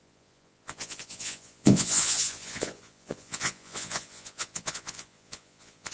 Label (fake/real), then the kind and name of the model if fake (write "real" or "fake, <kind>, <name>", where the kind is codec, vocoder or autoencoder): fake, vocoder, Vocos